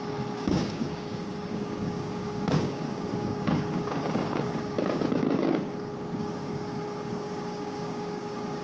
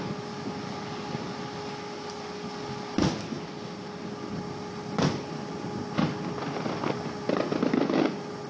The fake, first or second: first